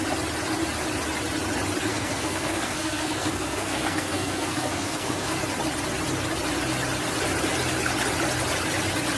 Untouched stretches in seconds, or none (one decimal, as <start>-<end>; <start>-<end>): 0.0-1.9; 5.4-9.2